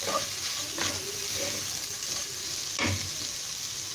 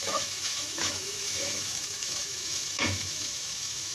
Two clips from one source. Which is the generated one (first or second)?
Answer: second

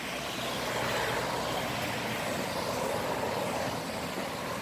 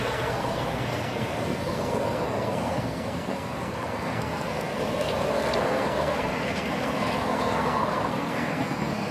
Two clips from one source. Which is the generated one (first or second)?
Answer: second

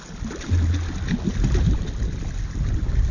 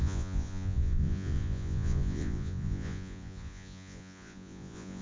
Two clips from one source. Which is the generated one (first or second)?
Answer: second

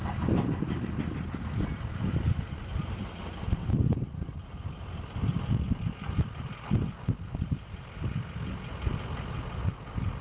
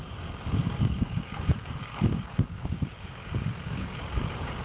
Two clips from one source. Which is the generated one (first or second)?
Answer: second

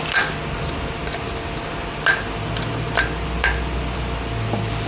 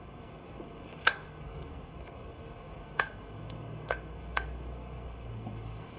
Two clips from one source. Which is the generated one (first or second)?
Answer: second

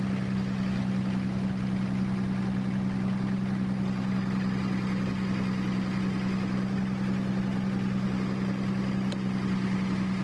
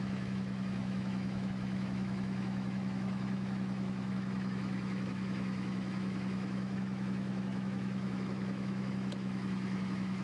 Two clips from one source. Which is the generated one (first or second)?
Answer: second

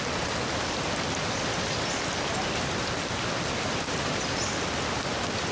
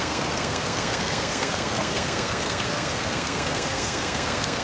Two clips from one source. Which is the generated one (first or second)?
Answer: second